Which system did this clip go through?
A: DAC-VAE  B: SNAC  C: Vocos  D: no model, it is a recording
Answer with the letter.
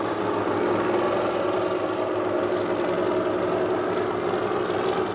D